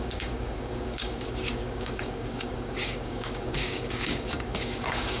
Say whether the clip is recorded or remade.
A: remade